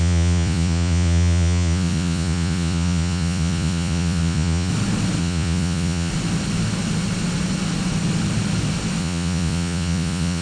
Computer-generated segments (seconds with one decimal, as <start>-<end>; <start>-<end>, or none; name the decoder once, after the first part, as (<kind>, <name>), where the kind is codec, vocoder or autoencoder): 0.0-4.7 (vocoder, Vocos); 5.2-6.1; 9.0-10.4